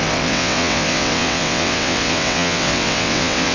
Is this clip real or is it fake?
fake